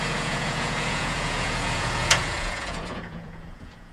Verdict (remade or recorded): remade